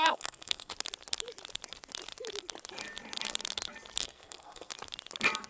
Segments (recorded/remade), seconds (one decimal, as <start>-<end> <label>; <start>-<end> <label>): 0.0-0.7 remade; 0.7-4.0 recorded; 4.0-4.7 remade; 4.7-5.5 recorded